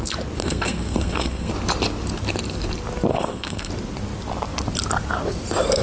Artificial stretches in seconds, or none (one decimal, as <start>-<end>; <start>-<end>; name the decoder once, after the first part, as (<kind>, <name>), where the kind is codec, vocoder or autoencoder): 0.4-1.5 (codec, SNAC); 3.1-3.7